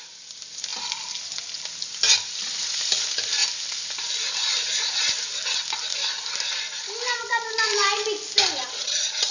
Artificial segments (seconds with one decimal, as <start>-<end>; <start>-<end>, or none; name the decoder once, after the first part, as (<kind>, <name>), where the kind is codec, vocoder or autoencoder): 0.0-0.7 (vocoder, BigVGAN v2); 2.3-3.4; 6.4-7.8; 8.6-9.3